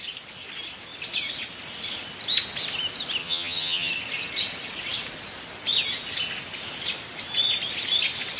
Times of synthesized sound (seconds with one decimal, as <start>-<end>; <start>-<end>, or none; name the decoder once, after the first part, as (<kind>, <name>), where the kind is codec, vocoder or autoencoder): 3.2-3.9 (vocoder, HiFi-GAN)